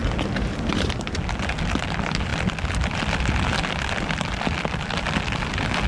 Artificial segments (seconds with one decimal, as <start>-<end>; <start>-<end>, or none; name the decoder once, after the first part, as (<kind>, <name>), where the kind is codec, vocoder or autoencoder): none